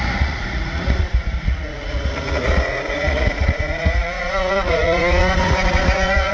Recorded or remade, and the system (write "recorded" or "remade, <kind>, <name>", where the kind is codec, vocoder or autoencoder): remade, vocoder, Vocos